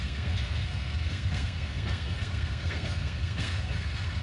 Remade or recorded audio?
remade